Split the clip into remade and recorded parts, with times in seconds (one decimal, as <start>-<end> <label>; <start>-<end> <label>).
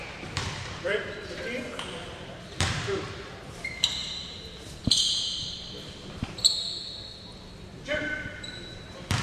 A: 0.0-9.2 remade